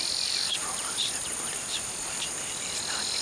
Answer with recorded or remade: recorded